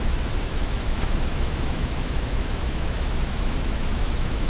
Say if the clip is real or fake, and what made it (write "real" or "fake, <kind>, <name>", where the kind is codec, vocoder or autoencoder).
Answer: fake, autoencoder, DAC-VAE